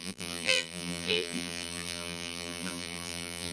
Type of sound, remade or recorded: remade